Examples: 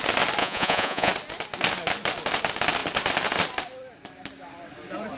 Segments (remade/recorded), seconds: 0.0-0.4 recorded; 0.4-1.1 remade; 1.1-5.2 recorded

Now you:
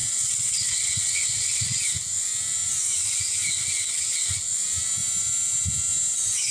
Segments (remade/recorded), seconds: 0.0-1.8 remade; 1.8-6.5 recorded

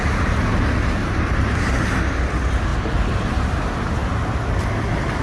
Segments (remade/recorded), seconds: 0.0-1.0 recorded; 1.0-2.0 remade; 2.0-5.2 recorded